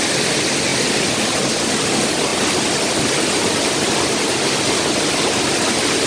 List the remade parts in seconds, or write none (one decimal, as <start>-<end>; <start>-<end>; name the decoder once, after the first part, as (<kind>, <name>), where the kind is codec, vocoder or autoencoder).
none